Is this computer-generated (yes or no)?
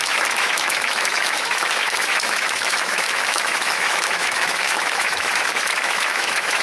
yes